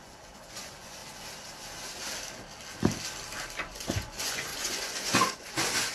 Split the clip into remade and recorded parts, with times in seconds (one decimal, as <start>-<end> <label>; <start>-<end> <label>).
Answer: 0.0-1.0 remade; 1.0-3.6 recorded; 3.6-5.9 remade